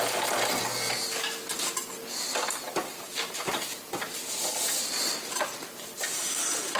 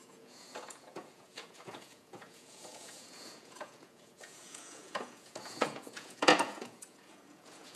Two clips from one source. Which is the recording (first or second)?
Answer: first